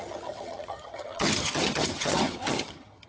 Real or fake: fake